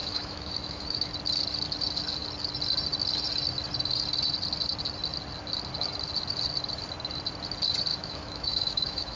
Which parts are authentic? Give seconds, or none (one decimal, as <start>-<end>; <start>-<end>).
1.1-7.9